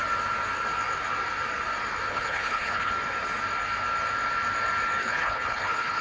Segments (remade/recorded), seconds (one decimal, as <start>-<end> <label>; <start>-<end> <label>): 0.0-2.1 recorded; 2.1-2.9 remade; 2.9-5.0 recorded; 5.0-6.0 remade